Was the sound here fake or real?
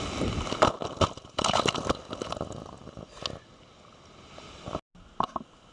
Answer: real